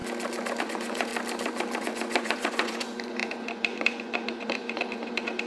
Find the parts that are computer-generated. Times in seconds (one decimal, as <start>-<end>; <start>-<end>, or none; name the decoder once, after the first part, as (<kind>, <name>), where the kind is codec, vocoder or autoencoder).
0.6-1.1 (vocoder, Vocos); 1.8-5.5